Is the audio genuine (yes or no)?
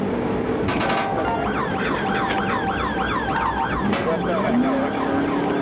yes